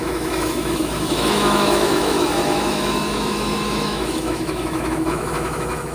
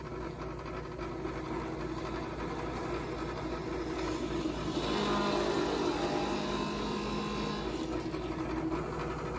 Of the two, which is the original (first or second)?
second